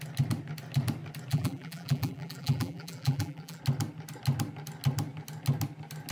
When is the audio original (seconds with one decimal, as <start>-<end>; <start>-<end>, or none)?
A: 0.0-1.3; 3.6-6.1